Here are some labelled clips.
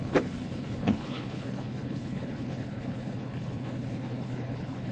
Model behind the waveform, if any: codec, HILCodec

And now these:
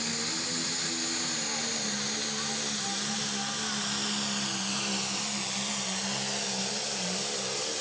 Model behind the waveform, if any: none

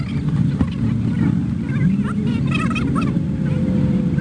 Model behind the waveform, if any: none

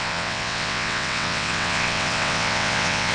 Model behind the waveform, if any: vocoder, WaveNeXt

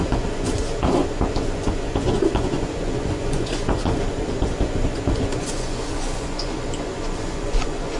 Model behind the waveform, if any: vocoder, Vocos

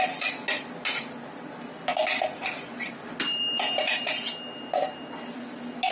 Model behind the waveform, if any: none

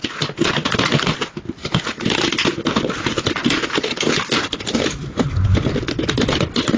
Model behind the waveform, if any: none